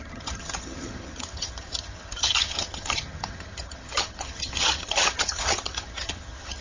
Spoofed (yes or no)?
yes